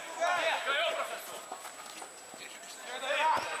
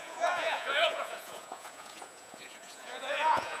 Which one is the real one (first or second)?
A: first